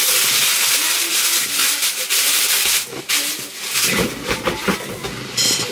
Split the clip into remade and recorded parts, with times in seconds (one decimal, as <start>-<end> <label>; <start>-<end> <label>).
0.0-1.6 recorded; 1.6-3.1 remade; 3.1-5.7 recorded